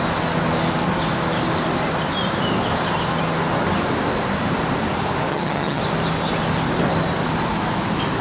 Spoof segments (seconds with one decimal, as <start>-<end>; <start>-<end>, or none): 5.3-5.8